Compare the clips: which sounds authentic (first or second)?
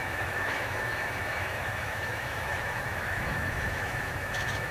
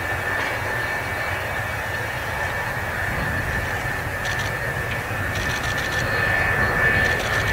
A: second